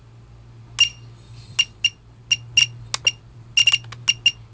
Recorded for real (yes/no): yes